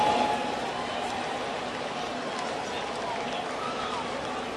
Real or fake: real